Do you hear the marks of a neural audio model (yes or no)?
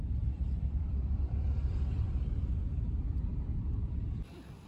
yes